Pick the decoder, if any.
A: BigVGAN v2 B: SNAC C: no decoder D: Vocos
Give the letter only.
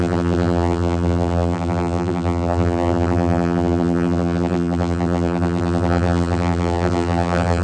A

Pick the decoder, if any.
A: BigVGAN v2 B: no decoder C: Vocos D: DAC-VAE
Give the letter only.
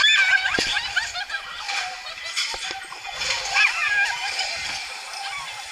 B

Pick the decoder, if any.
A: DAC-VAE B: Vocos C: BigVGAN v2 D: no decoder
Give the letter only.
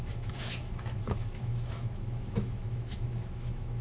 A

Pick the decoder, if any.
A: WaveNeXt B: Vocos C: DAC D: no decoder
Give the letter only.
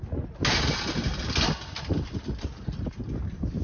D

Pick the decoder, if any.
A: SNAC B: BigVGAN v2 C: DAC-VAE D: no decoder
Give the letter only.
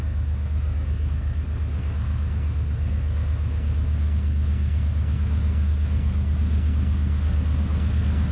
A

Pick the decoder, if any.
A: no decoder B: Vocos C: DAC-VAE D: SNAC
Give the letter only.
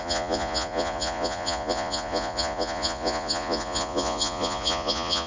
B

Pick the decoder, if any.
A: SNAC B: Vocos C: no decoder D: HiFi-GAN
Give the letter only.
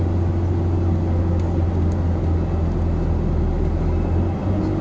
C